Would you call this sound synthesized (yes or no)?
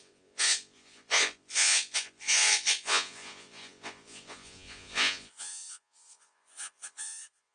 yes